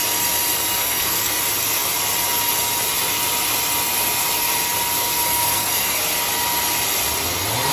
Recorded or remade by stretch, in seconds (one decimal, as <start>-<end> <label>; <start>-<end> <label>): 0.0-0.8 recorded; 0.8-1.4 remade; 1.4-5.4 recorded; 5.4-6.0 remade; 6.0-7.7 recorded